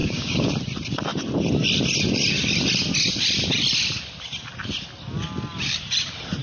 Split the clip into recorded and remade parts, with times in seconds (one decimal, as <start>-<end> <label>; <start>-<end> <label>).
0.0-0.5 remade; 0.5-6.4 recorded